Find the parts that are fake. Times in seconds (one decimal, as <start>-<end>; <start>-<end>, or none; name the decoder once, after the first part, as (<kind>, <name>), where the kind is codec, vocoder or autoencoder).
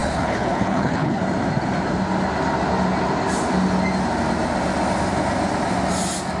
0.0-1.2 (codec, HILCodec)